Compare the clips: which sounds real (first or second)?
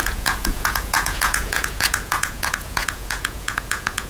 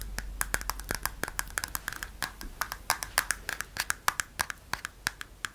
second